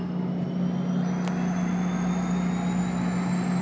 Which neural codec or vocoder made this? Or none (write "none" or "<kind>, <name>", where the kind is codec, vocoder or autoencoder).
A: none